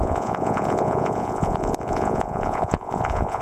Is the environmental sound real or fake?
fake